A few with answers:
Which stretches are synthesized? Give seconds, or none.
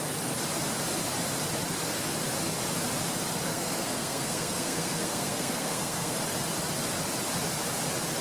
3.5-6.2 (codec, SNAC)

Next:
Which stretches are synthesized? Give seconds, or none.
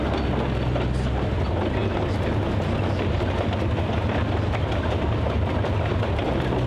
none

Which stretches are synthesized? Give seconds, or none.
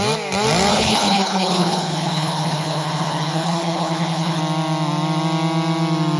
0.7-4.4 (codec, HILCodec)